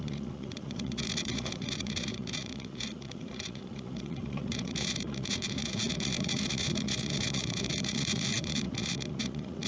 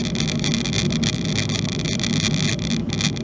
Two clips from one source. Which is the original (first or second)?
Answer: second